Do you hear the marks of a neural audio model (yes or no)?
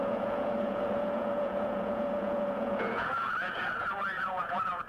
yes